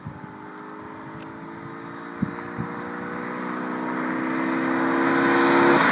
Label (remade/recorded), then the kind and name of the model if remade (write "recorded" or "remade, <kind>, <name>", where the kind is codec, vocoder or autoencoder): recorded